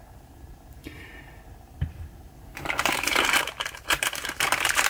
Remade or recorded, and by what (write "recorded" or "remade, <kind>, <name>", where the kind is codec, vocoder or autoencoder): remade, vocoder, BigVGAN v2